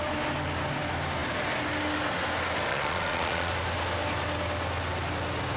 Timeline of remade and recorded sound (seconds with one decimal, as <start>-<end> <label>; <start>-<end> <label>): 0.0-2.7 recorded; 2.7-3.5 remade; 3.5-5.6 recorded